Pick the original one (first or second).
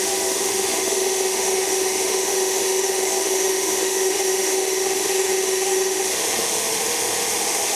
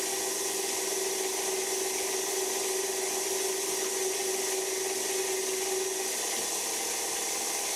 second